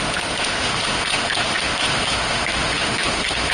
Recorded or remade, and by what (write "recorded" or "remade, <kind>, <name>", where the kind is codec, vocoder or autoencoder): remade, autoencoder, DAC-VAE